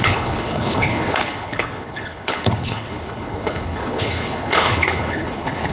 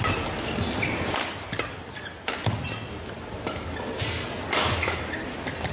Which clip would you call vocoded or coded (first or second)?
first